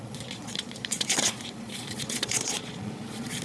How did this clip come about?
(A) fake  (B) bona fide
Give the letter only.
A